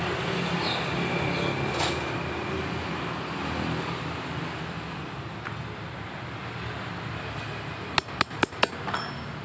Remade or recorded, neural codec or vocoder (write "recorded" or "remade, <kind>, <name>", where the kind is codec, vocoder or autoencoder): recorded